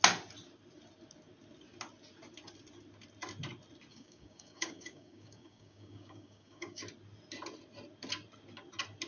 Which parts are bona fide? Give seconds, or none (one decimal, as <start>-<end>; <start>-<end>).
0.0-3.9; 6.8-9.1